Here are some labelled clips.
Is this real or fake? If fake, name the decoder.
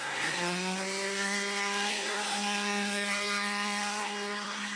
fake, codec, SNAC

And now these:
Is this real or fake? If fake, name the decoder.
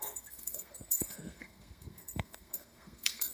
fake, codec, SNAC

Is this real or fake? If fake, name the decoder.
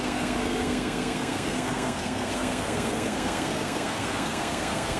fake, codec, SNAC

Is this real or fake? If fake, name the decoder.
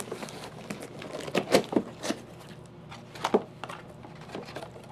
real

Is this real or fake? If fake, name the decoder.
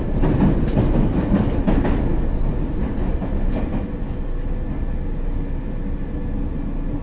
real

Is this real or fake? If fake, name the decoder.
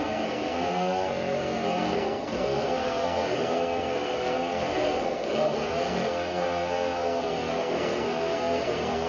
fake, codec, SNAC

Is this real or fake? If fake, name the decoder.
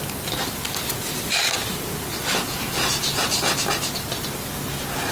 real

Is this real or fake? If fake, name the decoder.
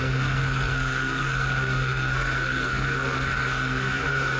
fake, codec, SNAC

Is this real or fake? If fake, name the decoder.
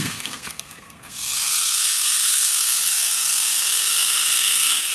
fake, codec, SNAC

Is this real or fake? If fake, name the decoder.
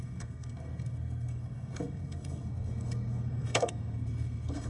fake, codec, SNAC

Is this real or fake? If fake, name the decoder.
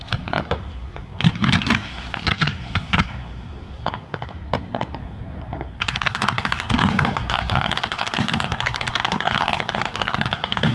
fake, codec, SNAC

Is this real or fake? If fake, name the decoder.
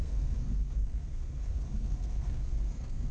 fake, codec, SNAC